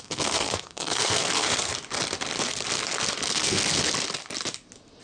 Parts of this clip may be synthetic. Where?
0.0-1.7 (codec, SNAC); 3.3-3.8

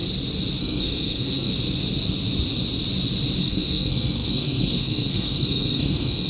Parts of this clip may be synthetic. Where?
0.6-1.5 (codec, SNAC); 3.4-6.3

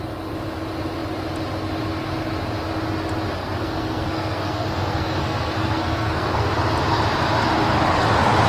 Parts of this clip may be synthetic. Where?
3.4-6.5 (codec, SNAC)

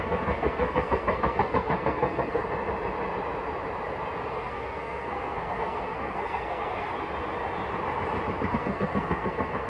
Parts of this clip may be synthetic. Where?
0.0-2.4 (codec, SNAC); 4.3-6.9; 8.5-9.7